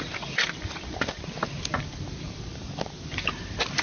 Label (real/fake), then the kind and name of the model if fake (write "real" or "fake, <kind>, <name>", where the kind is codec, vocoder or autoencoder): real